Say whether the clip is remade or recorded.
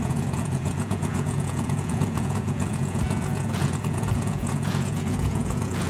remade